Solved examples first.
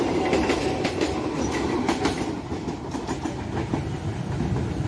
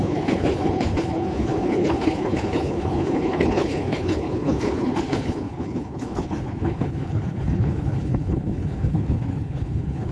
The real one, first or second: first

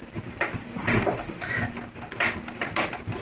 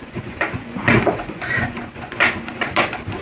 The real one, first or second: first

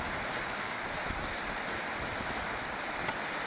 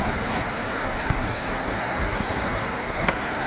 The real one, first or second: first